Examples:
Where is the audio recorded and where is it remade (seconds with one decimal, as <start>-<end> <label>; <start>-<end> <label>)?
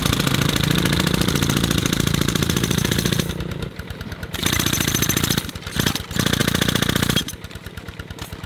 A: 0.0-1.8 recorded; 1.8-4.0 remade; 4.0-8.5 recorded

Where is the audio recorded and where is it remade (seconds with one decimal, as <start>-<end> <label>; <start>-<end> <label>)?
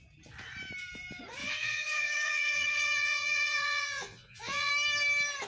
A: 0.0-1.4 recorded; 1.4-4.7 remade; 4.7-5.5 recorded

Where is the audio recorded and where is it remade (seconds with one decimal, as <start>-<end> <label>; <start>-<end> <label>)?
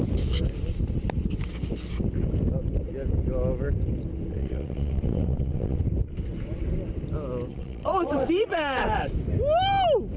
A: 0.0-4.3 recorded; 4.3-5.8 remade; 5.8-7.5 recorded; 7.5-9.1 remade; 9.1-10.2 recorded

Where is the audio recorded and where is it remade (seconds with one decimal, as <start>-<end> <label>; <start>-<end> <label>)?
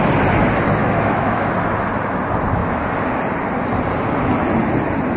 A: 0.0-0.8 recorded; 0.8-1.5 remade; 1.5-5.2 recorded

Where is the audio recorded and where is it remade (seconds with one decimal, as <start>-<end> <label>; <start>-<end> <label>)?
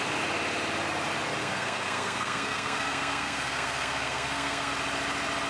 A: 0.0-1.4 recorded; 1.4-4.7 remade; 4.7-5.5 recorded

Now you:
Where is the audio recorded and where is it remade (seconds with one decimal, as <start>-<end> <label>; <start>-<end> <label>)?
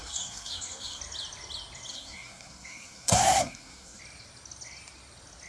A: 0.0-1.0 remade; 1.0-1.9 recorded; 1.9-4.0 remade; 4.0-5.5 recorded